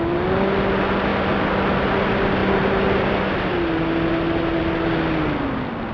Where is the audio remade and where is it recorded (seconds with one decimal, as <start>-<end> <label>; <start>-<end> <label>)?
0.0-5.9 recorded